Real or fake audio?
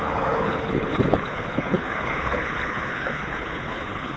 fake